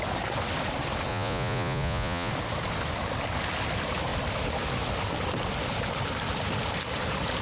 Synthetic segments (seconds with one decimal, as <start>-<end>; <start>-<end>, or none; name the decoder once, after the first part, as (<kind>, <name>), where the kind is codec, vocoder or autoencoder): 1.1-2.3 (vocoder, Vocos)